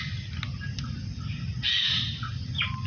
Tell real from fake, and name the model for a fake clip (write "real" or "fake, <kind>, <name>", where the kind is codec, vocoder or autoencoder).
real